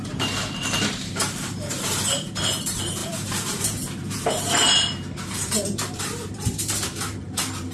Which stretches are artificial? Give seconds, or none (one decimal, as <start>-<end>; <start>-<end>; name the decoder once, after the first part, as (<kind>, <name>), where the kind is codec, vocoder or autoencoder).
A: 0.0-7.7 (vocoder, BigVGAN v2)